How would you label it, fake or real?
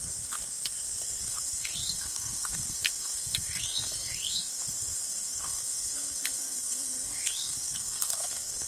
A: fake